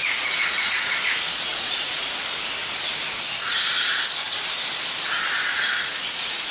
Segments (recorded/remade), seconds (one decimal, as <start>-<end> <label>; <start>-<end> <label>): 0.0-0.9 remade; 0.9-1.5 recorded; 1.5-2.2 remade; 2.2-5.5 recorded; 5.5-6.5 remade